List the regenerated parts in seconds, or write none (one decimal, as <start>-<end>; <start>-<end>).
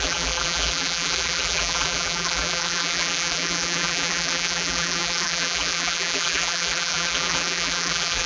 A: 0.0-8.3